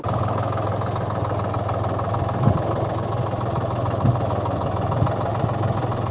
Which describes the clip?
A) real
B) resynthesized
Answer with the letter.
A